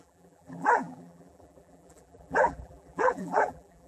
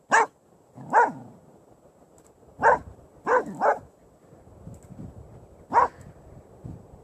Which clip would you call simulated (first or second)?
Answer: first